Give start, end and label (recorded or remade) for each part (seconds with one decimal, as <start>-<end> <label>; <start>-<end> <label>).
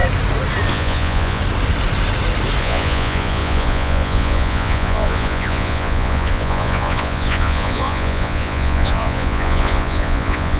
0.0-0.7 recorded; 0.7-1.4 remade; 1.4-2.6 recorded; 2.6-10.6 remade